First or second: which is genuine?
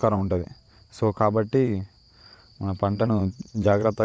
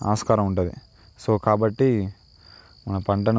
second